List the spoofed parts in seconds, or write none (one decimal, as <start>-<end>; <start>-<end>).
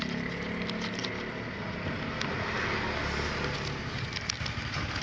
none